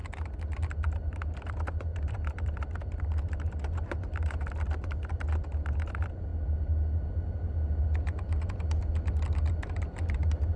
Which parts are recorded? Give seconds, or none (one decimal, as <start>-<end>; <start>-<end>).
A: 0.0-0.6; 6.3-9.5